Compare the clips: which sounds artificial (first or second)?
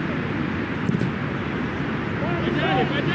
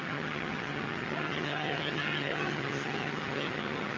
second